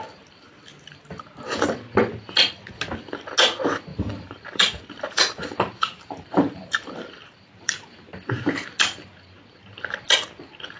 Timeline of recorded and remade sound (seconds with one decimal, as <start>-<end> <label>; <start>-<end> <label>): 0.0-3.9 recorded; 3.9-8.4 remade; 8.4-10.8 recorded